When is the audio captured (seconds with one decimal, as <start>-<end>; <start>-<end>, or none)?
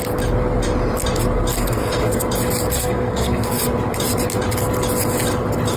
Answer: 0.0-1.5; 2.2-2.7; 3.6-5.8